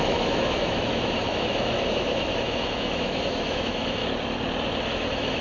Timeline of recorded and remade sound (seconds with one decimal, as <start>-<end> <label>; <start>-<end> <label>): 0.0-4.0 remade; 4.0-4.9 recorded; 4.9-5.4 remade